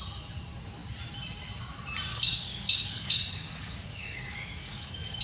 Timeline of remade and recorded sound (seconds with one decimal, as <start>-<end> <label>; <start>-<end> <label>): 0.0-2.1 recorded; 2.1-5.2 remade